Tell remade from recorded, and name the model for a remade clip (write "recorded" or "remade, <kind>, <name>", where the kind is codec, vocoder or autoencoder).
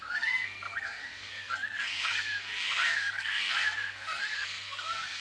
remade, codec, SNAC